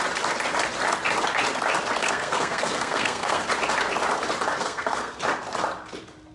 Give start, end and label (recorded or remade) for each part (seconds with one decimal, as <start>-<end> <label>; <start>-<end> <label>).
0.0-2.0 recorded; 2.0-3.4 remade; 3.4-4.6 recorded; 4.6-5.2 remade; 5.2-6.3 recorded